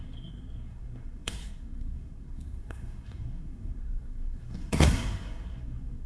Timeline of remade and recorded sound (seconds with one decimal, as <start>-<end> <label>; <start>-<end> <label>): 0.0-6.1 remade